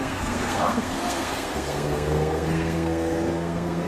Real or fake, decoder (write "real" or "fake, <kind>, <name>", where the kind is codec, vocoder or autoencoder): fake, codec, SNAC